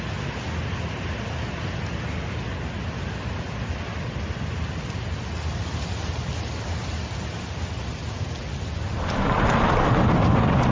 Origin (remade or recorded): recorded